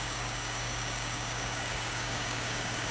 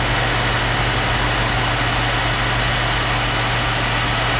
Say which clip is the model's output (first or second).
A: first